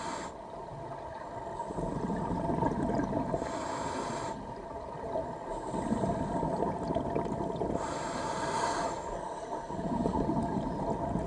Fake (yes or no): no